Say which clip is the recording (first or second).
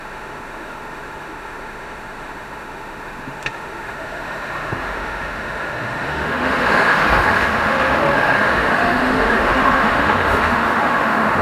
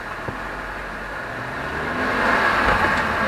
second